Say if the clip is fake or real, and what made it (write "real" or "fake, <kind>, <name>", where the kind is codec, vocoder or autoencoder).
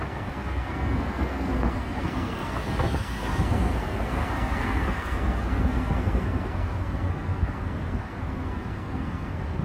fake, codec, SNAC